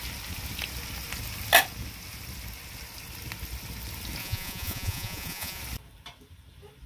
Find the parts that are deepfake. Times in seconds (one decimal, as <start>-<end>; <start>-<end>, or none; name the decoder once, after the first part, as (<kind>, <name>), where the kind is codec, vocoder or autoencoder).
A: 4.2-5.6 (vocoder, Vocos)